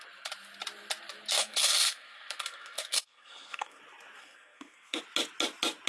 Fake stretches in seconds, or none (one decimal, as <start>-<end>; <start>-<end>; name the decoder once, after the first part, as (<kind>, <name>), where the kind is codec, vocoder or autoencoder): 1.4-3.8 (codec, SNAC); 4.2-5.0